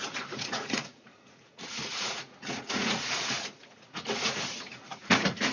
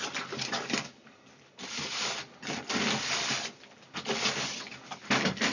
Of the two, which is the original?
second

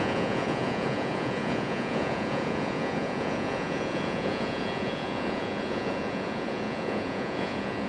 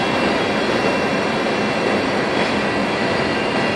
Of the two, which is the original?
second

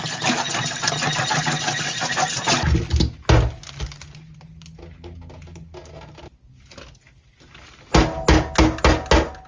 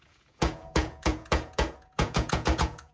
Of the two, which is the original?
first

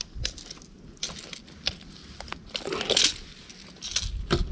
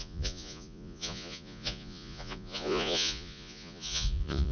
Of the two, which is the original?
first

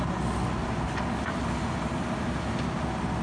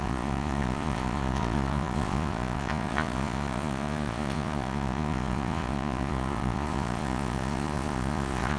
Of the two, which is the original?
first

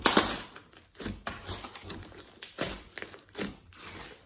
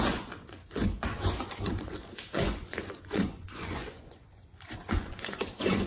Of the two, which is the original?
first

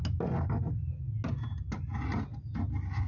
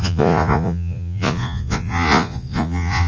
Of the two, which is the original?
first